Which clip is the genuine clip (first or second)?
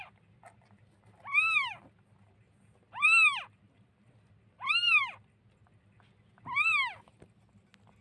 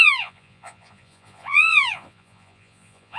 first